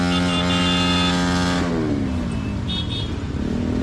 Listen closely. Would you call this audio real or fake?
real